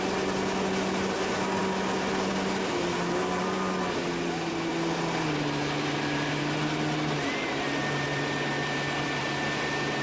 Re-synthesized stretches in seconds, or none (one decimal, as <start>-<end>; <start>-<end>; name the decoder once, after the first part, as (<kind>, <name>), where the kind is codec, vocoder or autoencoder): none